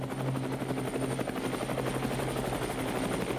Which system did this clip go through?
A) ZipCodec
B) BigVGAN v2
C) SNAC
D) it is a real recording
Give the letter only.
D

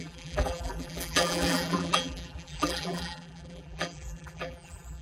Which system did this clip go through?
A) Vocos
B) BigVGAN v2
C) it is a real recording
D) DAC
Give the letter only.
B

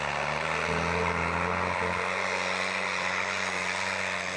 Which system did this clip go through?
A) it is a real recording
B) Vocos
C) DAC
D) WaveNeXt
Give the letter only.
A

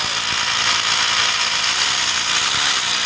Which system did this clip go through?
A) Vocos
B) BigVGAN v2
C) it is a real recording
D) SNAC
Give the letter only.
C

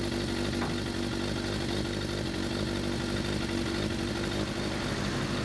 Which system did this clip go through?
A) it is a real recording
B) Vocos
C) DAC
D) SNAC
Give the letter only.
A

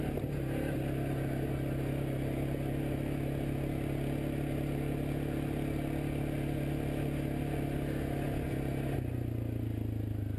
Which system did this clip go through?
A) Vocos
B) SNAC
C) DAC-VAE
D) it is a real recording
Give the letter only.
D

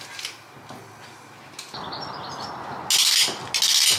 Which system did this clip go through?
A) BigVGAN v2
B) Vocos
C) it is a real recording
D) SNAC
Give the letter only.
C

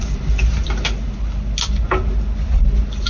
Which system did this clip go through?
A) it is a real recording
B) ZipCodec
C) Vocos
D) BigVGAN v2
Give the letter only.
A